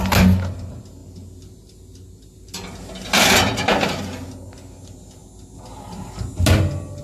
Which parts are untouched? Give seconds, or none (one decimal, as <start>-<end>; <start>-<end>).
0.0-7.0